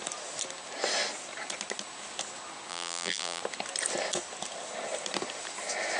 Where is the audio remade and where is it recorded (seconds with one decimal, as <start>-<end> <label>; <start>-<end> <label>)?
0.0-2.7 recorded; 2.7-3.4 remade; 3.4-6.0 recorded

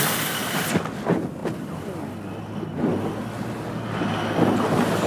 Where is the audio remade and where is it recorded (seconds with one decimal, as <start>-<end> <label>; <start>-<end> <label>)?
0.0-5.1 recorded

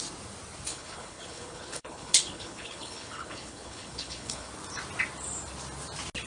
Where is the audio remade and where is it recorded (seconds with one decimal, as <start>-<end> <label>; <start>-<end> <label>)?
0.0-0.7 recorded; 0.7-4.5 remade; 4.5-6.3 recorded

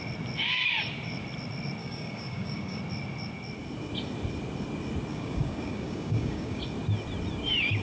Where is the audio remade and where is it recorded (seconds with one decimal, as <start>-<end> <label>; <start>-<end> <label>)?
0.0-1.8 recorded; 1.8-2.8 remade; 2.8-5.1 recorded; 5.1-6.6 remade; 6.6-7.8 recorded